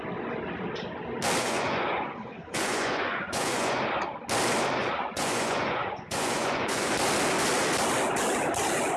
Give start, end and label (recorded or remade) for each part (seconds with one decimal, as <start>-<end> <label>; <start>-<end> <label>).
0.0-1.4 recorded; 1.4-3.8 remade; 3.8-4.8 recorded; 4.8-6.9 remade; 6.9-9.0 recorded